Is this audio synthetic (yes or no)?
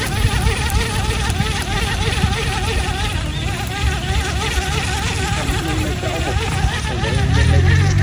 no